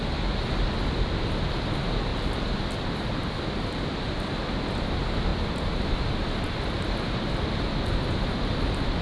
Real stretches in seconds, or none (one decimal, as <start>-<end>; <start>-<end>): 0.0-2.1; 3.7-5.3; 5.8-9.0